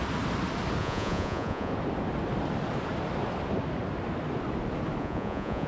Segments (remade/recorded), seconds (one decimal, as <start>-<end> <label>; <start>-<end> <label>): 0.0-0.8 recorded; 0.8-1.7 remade; 1.7-5.0 recorded; 5.0-5.7 remade